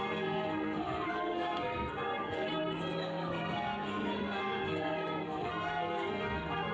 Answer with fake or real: fake